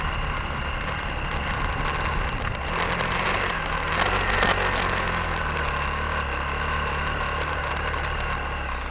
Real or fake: real